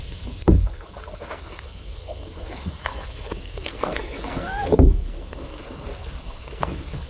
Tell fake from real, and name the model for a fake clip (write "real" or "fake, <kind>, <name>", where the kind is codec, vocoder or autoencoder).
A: fake, codec, SNAC